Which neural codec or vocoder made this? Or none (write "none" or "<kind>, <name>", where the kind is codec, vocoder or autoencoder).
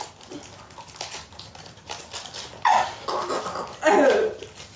none